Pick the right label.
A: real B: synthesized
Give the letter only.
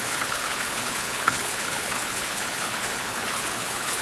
B